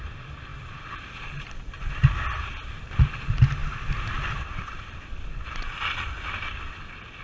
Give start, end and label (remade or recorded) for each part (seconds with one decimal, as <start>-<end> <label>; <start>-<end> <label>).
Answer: 0.0-7.2 recorded